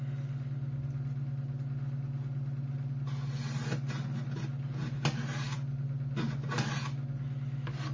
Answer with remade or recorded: recorded